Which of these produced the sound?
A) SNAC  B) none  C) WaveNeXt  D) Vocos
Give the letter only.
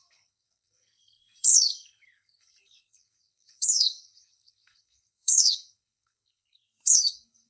A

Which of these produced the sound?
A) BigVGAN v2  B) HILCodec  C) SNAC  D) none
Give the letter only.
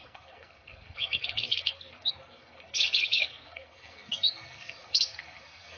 C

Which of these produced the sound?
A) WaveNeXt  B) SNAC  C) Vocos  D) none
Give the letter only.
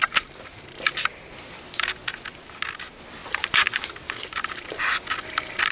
D